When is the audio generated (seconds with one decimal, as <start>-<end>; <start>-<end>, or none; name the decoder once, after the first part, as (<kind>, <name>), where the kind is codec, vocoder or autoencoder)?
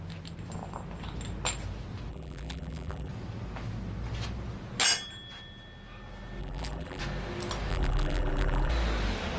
2.1-3.1 (vocoder, BigVGAN v2); 6.4-7.0; 7.7-8.7